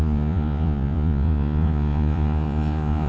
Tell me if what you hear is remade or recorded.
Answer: remade